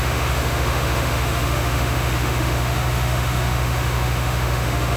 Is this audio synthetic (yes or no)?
yes